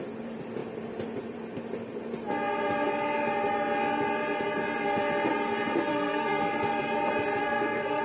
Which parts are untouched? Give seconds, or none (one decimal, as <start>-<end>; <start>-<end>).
0.0-5.9; 6.4-7.4